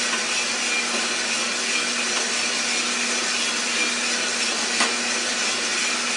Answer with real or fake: real